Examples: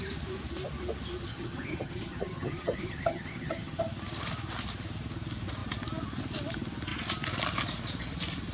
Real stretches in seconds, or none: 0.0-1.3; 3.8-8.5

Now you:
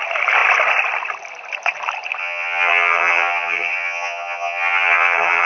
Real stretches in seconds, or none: 0.0-2.2

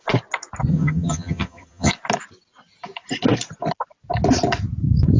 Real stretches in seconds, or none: 0.0-0.7; 1.9-5.2

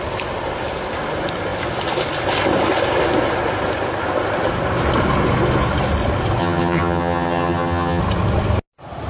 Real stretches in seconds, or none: 0.0-6.4; 8.0-9.1

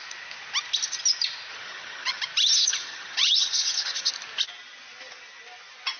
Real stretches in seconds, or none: 0.0-1.5; 2.2-2.7; 4.1-6.0

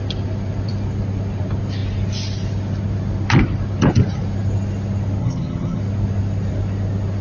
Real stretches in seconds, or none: 0.0-5.2; 5.8-7.2